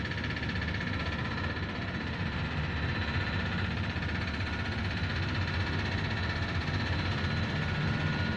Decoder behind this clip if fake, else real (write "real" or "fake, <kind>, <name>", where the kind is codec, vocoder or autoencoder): real